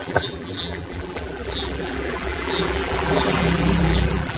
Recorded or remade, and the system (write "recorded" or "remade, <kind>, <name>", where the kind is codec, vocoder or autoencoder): remade, vocoder, BigVGAN v2